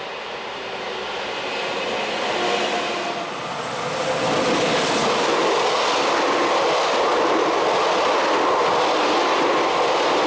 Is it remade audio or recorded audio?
recorded